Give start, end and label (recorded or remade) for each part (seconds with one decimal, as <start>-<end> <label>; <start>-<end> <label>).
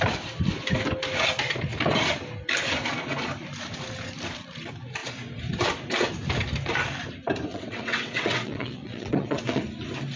0.0-7.5 recorded; 7.5-9.6 remade; 9.6-10.2 recorded